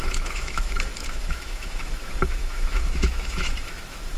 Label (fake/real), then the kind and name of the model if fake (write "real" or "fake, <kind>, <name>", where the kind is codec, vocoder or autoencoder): fake, autoencoder, DAC-VAE